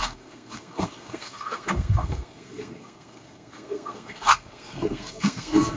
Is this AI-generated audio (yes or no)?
yes